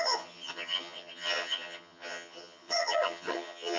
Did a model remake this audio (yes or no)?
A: yes